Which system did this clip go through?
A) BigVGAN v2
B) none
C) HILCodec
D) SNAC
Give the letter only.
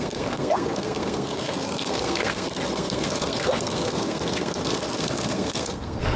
D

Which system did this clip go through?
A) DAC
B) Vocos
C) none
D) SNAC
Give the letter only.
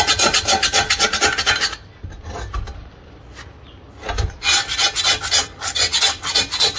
C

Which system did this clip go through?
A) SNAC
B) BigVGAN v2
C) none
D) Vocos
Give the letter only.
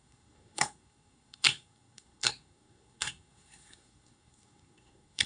A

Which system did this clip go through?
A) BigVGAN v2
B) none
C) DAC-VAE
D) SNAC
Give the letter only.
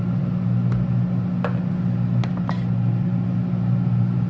B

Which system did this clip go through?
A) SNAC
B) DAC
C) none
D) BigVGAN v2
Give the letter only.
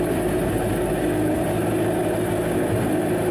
C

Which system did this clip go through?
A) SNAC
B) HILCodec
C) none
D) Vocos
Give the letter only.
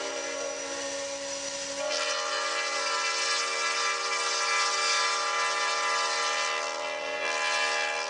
C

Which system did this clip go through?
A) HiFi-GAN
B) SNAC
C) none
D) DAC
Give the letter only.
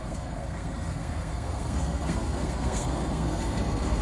B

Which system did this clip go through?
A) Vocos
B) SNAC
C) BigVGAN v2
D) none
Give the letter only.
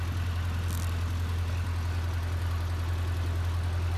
D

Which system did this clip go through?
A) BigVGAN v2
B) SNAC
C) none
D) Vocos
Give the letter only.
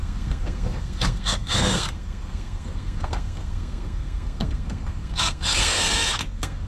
B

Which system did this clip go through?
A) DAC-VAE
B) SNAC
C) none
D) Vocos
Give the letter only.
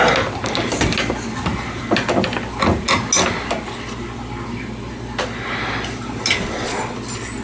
C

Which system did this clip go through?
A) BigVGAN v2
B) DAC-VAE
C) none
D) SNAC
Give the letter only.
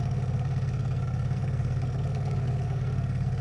D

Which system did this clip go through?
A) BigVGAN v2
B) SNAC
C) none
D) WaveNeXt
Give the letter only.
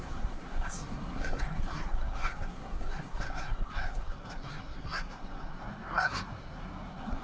B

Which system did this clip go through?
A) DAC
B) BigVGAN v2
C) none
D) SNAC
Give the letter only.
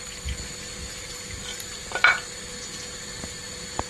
C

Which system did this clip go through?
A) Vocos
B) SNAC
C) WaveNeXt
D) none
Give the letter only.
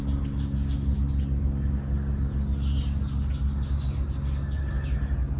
D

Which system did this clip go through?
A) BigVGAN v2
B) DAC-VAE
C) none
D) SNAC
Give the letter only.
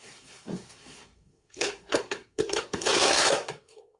D